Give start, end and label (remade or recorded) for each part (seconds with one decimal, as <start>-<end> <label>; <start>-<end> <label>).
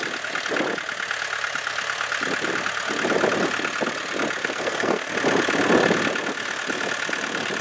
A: 0.0-4.4 recorded; 4.4-5.1 remade; 5.1-7.6 recorded